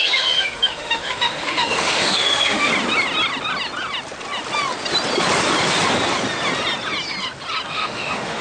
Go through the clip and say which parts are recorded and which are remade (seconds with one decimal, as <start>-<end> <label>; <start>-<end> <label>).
0.0-2.7 remade; 2.7-7.7 recorded; 7.7-8.4 remade